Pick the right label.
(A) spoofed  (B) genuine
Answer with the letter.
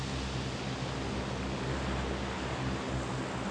B